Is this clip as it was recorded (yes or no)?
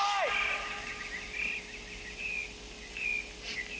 yes